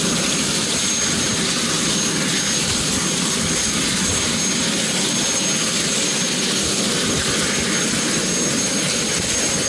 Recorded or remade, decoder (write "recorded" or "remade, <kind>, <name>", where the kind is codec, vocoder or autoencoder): recorded